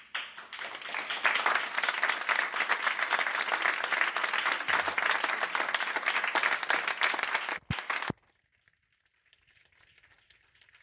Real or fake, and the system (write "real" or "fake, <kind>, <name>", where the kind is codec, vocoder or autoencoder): real